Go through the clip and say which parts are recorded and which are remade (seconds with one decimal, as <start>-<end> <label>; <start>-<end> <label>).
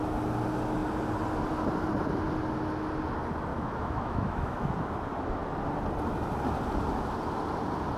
0.0-3.5 recorded; 3.5-4.7 remade; 4.7-8.0 recorded